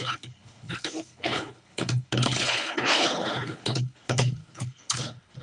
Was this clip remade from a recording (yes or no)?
yes